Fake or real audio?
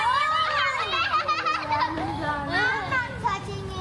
real